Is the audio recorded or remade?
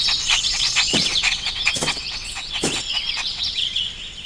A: remade